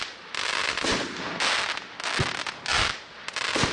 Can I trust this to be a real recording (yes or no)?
yes